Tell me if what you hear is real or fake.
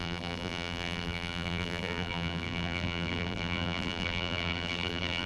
fake